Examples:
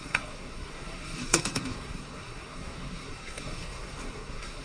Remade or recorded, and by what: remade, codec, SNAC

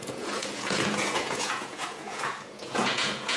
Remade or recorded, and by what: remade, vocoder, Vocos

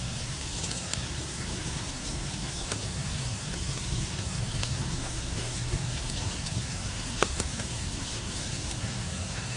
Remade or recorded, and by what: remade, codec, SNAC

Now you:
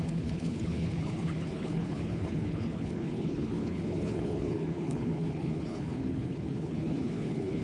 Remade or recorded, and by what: remade, codec, HILCodec